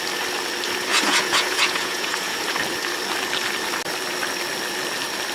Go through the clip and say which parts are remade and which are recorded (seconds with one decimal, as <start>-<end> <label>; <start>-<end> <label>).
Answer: 0.0-0.9 recorded; 0.9-2.4 remade; 2.4-5.3 recorded